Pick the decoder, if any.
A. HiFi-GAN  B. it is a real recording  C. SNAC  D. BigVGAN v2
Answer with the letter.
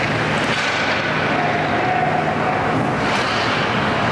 B